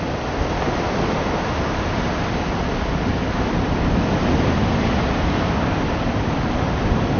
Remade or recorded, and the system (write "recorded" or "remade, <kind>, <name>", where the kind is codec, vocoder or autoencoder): recorded